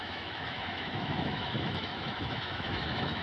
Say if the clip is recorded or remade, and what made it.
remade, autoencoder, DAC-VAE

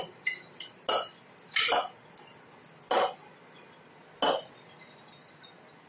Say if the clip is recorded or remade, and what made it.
recorded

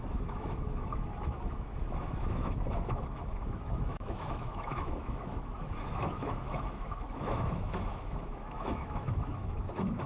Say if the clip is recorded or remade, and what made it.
remade, autoencoder, DAC-VAE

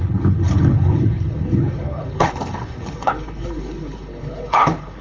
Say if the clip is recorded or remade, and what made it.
remade, codec, HILCodec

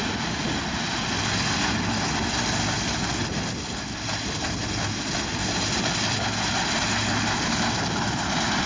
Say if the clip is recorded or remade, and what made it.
recorded